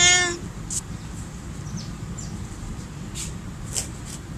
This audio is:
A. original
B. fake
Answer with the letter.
A